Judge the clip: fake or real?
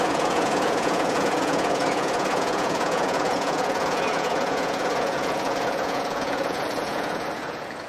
fake